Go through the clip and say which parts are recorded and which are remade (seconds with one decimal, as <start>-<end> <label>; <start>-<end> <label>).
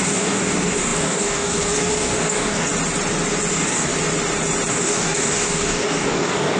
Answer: 0.0-2.7 remade; 2.7-3.5 recorded; 3.5-3.9 remade; 3.9-4.7 recorded; 4.7-6.6 remade